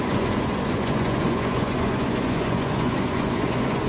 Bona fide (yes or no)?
no